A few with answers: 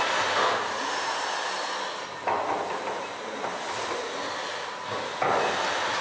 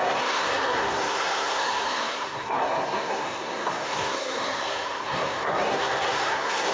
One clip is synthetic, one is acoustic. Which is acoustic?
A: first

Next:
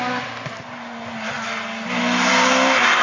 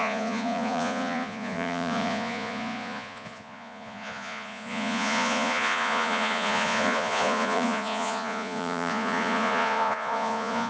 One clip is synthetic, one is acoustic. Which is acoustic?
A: first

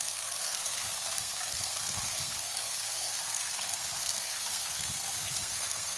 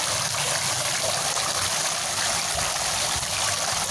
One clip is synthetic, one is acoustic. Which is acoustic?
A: second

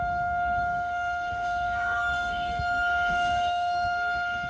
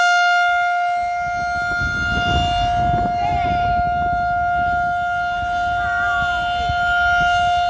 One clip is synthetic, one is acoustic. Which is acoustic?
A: second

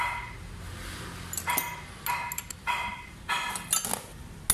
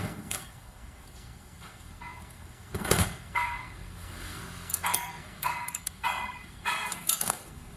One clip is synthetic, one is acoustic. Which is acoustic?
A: first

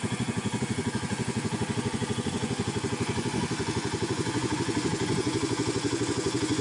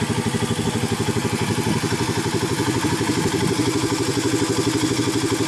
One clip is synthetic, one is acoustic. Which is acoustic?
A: second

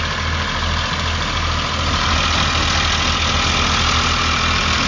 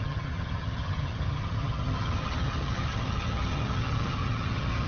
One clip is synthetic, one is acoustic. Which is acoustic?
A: first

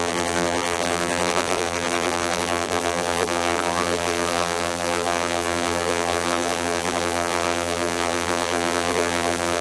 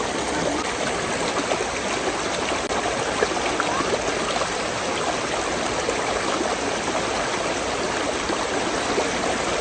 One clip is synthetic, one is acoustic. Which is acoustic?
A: second